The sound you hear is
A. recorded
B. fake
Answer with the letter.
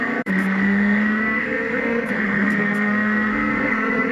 B